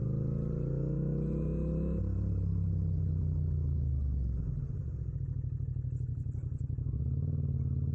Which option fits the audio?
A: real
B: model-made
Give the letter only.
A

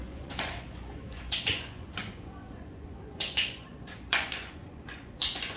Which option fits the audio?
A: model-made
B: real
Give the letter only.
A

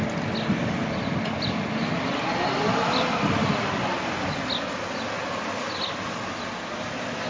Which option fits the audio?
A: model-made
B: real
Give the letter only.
B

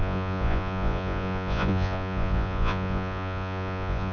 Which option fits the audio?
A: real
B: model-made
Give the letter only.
B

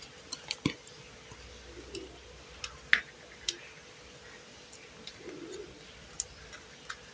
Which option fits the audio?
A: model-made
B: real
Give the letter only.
B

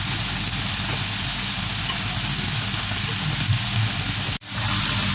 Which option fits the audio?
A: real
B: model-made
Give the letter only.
A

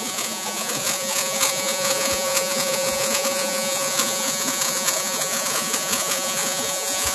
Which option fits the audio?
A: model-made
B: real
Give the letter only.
A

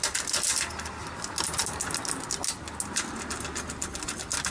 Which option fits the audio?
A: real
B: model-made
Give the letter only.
A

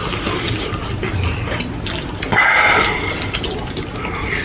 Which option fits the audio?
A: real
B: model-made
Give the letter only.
A